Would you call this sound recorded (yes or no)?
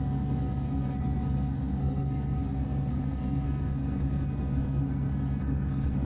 no